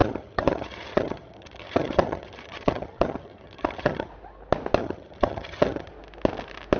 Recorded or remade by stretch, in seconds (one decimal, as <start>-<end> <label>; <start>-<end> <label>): 0.0-4.1 remade; 4.1-4.8 recorded; 4.8-5.9 remade; 5.9-6.8 recorded